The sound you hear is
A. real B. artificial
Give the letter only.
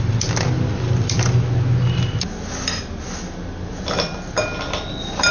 A